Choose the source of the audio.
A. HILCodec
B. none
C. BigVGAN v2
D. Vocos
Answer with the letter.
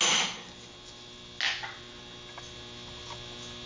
B